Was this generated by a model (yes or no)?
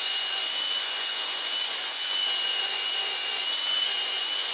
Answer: yes